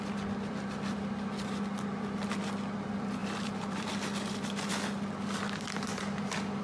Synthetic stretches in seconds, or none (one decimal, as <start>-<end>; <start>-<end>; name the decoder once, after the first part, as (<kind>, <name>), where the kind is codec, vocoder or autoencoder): 3.2-3.9 (vocoder, BigVGAN v2)